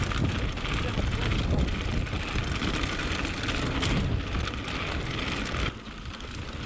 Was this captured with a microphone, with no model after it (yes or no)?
yes